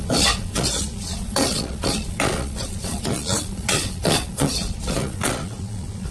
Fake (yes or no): yes